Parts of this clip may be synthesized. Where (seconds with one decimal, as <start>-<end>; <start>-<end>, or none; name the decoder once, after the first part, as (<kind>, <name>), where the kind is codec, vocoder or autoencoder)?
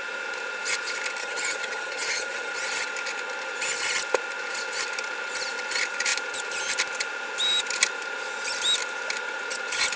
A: 1.2-2.5 (vocoder, HiFi-GAN)